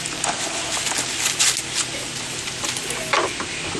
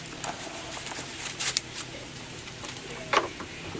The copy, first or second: second